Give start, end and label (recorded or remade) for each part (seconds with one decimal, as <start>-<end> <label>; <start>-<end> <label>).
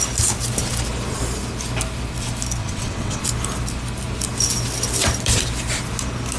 0.0-2.6 recorded; 2.6-3.2 remade; 3.2-6.4 recorded